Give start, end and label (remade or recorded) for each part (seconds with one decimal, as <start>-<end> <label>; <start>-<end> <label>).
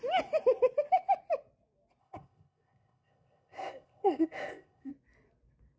0.0-2.0 recorded; 2.0-4.9 remade; 4.9-5.8 recorded